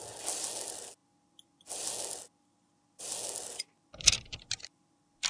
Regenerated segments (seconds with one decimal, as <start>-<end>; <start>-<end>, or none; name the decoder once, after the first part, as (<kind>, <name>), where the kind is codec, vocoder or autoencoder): none